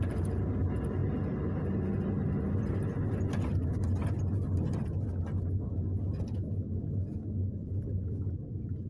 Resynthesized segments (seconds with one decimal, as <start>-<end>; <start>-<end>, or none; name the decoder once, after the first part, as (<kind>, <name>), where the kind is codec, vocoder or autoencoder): none